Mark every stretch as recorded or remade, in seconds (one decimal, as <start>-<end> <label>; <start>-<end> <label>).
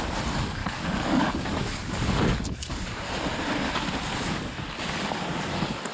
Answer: 0.0-0.6 recorded; 0.6-3.0 remade; 3.0-5.9 recorded